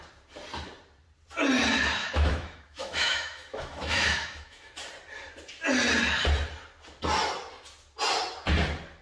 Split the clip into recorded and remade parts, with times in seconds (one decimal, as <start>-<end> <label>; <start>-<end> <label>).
0.0-2.0 recorded; 2.0-4.7 remade; 4.7-9.0 recorded